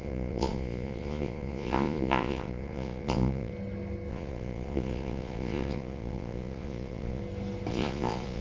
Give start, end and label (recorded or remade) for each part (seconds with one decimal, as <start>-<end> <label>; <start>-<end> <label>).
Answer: 0.0-3.5 remade; 3.5-4.1 recorded; 4.1-7.2 remade; 7.2-7.7 recorded; 7.7-8.4 remade